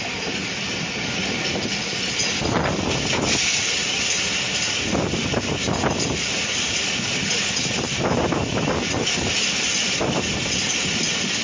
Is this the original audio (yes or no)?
yes